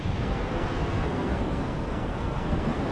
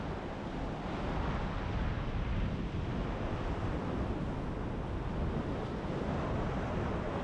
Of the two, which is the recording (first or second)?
second